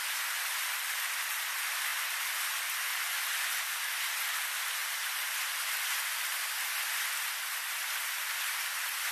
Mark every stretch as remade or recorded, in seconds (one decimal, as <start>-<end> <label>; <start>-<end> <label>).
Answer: 0.0-4.8 recorded; 4.8-5.5 remade; 5.5-7.8 recorded; 7.8-8.5 remade; 8.5-9.1 recorded